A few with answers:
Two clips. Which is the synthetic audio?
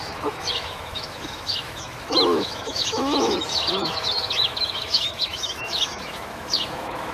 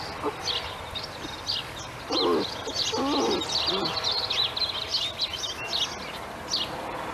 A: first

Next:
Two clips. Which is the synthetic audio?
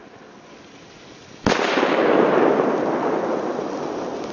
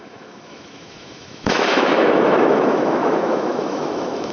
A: second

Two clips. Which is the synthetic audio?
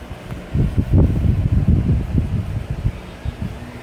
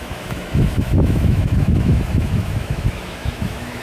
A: second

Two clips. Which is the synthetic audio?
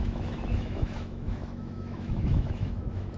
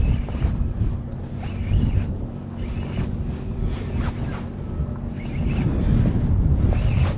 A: first